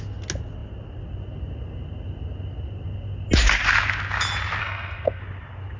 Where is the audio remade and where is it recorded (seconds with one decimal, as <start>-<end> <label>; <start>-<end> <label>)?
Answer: 0.0-4.6 recorded; 4.6-5.2 remade; 5.2-5.8 recorded